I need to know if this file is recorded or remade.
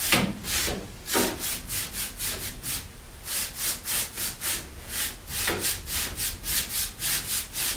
recorded